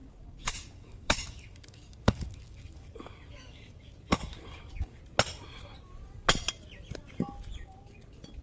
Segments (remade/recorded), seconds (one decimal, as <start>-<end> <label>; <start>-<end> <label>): 0.0-5.0 remade; 5.0-8.4 recorded